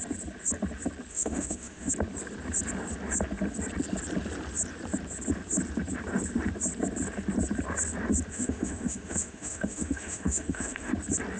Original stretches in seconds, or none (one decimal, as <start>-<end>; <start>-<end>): 0.0-1.1; 1.9-8.3; 10.9-11.4